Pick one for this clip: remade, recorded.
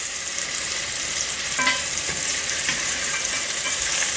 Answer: remade